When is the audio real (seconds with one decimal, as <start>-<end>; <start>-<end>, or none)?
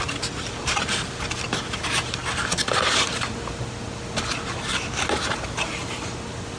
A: 0.0-6.6